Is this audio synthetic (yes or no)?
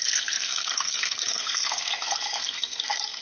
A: yes